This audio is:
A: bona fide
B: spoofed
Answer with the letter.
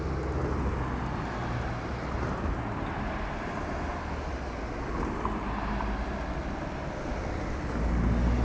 A